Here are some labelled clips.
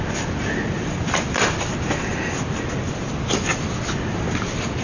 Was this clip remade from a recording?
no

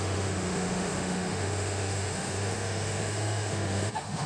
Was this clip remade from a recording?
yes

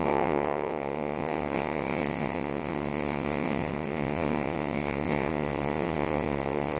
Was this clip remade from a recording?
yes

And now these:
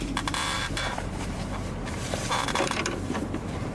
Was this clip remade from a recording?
yes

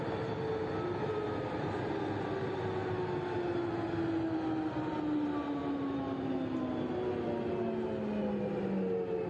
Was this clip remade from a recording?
no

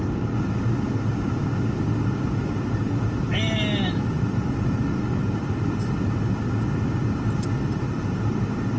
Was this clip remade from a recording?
no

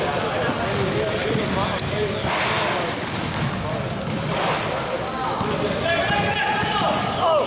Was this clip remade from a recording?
no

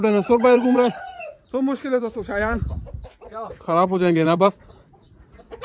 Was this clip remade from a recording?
yes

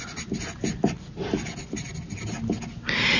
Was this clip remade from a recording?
no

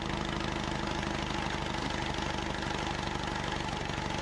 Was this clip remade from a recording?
no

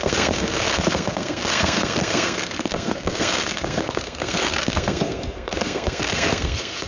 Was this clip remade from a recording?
yes